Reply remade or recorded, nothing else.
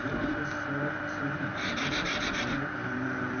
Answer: remade